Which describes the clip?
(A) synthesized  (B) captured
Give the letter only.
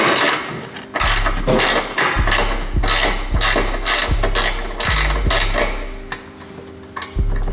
B